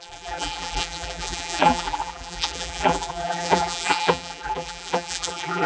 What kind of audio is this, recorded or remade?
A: remade